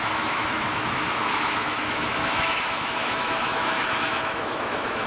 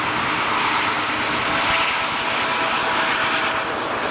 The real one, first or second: second